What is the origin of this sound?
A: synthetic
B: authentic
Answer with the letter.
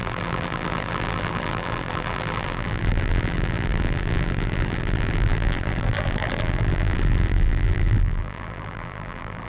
A